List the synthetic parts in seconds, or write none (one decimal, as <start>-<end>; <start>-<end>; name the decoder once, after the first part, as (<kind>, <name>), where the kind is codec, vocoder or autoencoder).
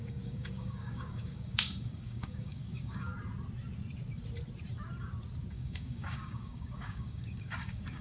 0.0-3.1 (codec, DAC); 5.5-8.0